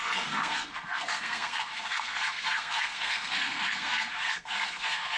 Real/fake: fake